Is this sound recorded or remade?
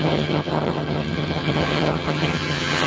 remade